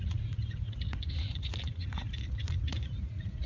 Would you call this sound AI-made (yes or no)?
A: yes